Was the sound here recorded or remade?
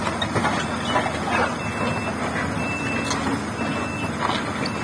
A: recorded